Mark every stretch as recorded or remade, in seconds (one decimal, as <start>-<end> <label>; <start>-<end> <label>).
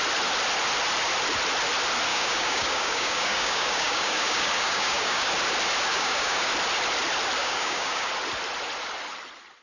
0.0-2.1 recorded; 2.1-5.3 remade; 5.3-5.9 recorded; 5.9-6.5 remade; 6.5-7.4 recorded; 7.4-8.1 remade; 8.1-9.6 recorded